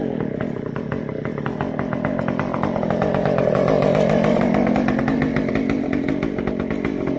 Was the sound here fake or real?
real